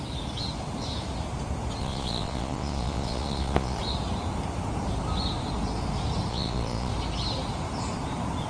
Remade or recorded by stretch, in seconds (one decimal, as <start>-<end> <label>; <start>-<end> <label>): 0.0-1.8 recorded; 1.8-3.8 remade; 3.8-6.3 recorded; 6.3-6.9 remade; 6.9-8.5 recorded